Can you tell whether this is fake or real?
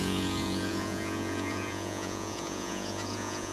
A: fake